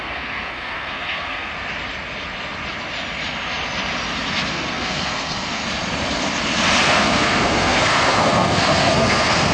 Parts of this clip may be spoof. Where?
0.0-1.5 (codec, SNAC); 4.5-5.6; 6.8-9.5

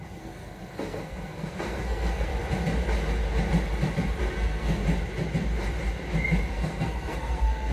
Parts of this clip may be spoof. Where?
0.0-2.3 (codec, SNAC); 4.2-4.8; 6.5-7.7

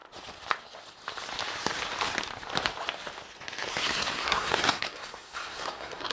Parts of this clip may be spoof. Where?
3.7-6.1 (codec, SNAC)

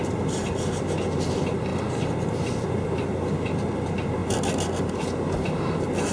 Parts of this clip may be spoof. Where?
none

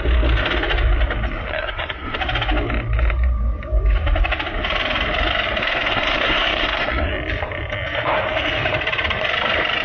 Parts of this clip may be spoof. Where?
1.5-2.2 (codec, SNAC); 5.6-7.1

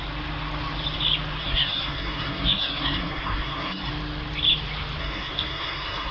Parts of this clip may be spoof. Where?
1.4-3.9 (codec, SNAC); 5.0-6.1